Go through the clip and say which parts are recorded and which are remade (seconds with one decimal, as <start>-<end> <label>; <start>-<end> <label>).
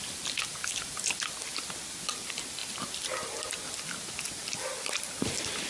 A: 0.0-5.7 recorded